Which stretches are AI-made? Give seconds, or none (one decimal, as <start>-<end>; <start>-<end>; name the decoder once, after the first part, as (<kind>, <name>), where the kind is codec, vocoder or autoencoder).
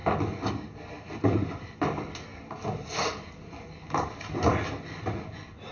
none